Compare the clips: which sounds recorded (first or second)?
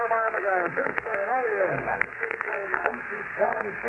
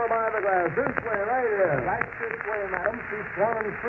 second